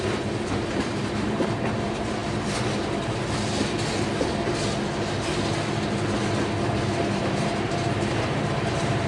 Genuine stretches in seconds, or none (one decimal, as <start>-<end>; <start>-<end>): 2.2-7.0